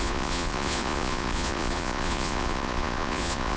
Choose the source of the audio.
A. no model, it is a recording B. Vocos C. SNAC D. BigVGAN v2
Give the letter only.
B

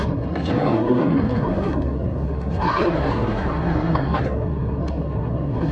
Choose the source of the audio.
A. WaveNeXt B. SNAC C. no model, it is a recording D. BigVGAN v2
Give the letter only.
B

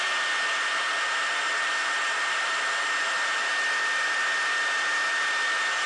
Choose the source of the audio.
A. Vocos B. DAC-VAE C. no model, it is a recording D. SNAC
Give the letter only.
C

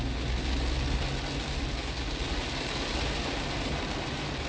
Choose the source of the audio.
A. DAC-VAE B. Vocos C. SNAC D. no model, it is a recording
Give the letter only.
D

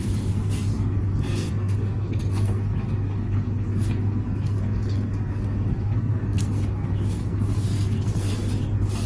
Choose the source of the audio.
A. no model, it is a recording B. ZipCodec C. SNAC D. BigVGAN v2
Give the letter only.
C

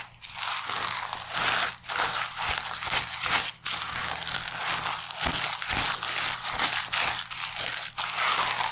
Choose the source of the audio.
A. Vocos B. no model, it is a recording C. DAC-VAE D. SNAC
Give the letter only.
B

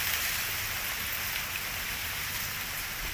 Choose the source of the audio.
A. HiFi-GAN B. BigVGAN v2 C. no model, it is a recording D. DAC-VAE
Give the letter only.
C